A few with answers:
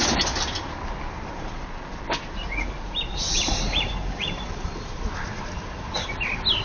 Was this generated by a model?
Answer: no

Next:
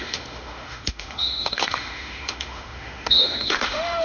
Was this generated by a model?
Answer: yes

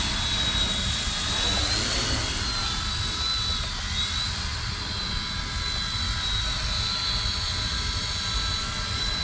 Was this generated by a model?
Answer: no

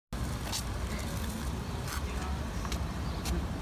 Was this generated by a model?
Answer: no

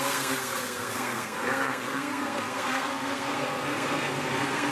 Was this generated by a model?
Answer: yes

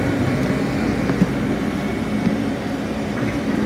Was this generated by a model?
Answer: no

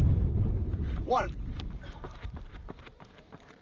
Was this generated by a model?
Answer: yes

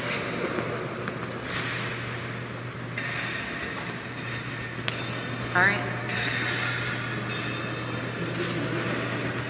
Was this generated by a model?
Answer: no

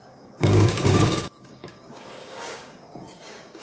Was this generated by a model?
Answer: yes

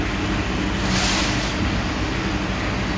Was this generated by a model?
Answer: no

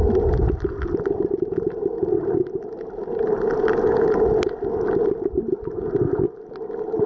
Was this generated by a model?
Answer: no